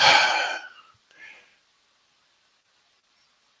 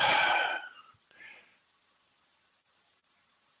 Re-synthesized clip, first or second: second